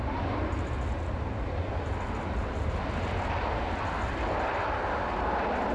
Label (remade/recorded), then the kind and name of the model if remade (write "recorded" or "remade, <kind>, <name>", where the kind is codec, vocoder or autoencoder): recorded